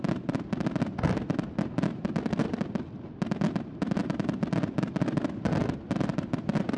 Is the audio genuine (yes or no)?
yes